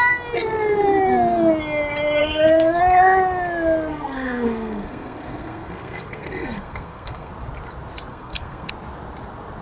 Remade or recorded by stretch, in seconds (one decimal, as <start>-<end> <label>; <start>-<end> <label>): 0.0-2.2 recorded; 2.2-2.8 remade; 2.8-3.9 recorded; 3.9-7.3 remade; 7.3-8.1 recorded; 8.1-8.7 remade; 8.7-9.6 recorded